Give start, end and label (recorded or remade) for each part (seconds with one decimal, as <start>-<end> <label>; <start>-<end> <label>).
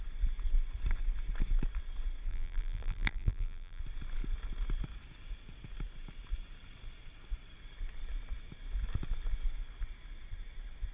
0.0-2.3 recorded; 2.3-3.8 remade; 3.8-10.9 recorded